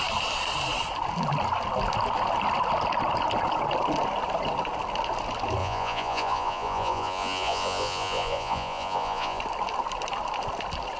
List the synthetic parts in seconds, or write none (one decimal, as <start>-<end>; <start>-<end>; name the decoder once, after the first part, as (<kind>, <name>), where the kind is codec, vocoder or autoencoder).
5.6-9.4 (vocoder, Vocos)